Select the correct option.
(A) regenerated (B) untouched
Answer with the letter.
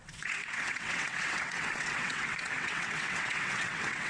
A